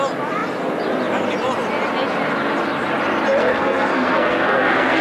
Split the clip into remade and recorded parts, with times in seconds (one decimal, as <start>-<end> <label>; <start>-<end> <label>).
0.0-3.4 recorded; 3.4-5.0 remade